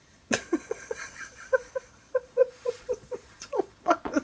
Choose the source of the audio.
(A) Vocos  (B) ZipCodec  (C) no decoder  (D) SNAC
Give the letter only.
A